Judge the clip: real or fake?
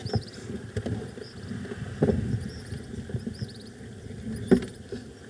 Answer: real